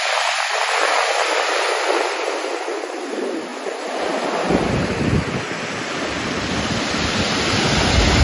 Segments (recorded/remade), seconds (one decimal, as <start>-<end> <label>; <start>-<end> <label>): 0.0-3.5 recorded; 3.5-4.1 remade; 4.1-8.2 recorded